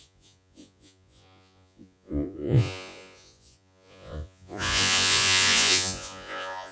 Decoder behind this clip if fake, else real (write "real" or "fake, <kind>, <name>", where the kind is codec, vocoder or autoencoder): fake, vocoder, Vocos